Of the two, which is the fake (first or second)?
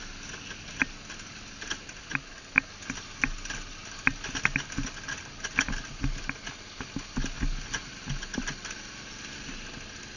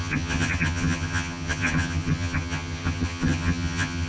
second